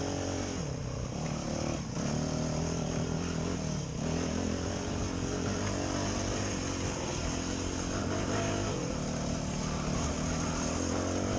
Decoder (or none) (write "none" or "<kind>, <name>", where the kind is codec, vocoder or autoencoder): none